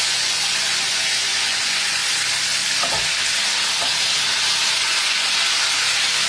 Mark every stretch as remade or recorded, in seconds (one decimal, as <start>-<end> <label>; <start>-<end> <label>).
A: 0.0-2.0 remade; 2.0-4.7 recorded; 4.7-5.4 remade; 5.4-6.3 recorded